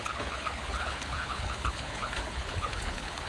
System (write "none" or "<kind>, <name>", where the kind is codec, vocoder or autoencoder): codec, HILCodec